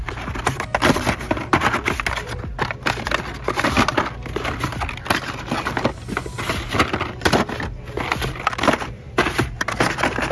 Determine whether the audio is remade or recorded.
recorded